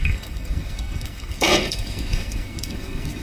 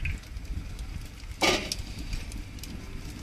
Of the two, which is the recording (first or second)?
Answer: second